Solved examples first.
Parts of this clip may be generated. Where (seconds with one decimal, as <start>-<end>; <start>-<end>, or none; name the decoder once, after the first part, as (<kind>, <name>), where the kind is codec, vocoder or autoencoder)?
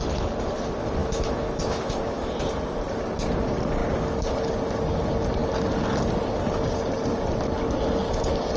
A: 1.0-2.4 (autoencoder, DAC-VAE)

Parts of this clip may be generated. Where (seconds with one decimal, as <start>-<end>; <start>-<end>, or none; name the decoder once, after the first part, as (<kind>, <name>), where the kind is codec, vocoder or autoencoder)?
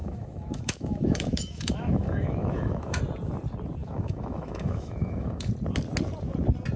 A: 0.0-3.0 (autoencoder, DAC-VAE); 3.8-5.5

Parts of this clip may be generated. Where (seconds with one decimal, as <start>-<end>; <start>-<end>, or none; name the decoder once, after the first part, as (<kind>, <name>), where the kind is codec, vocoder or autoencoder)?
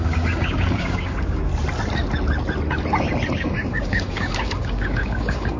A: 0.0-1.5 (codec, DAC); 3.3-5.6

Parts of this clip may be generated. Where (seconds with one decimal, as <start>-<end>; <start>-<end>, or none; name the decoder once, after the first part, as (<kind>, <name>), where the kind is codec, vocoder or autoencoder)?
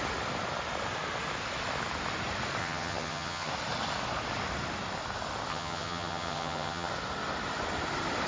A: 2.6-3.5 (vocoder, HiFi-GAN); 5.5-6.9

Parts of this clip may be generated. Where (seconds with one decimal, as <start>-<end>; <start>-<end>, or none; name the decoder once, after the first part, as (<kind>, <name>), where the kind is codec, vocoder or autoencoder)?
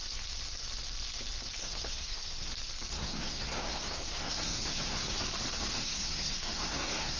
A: 1.6-2.5 (codec, SNAC); 2.9-5.2; 5.8-7.2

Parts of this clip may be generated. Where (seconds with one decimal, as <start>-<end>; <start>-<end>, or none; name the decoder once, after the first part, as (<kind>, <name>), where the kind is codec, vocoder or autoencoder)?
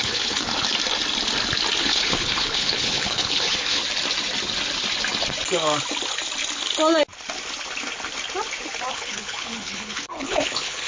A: 0.0-0.5 (codec, HILCodec); 1.8-3.8; 8.9-10.9